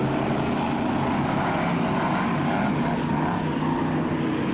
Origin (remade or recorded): recorded